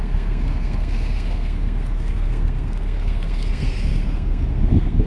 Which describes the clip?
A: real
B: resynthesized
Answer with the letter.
B